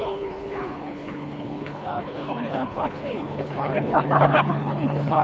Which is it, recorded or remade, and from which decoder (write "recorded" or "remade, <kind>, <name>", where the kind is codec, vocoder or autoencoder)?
remade, codec, HILCodec